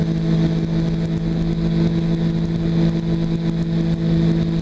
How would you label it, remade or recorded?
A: recorded